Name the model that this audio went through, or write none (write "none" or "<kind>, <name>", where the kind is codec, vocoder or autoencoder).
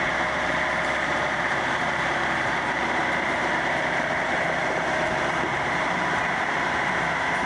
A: vocoder, BigVGAN v2